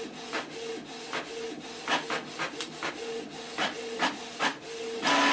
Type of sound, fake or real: real